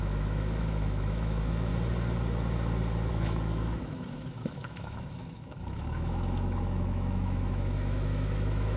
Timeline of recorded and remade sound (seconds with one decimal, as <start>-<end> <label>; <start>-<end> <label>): 0.0-1.7 remade; 1.7-3.1 recorded; 3.1-8.8 remade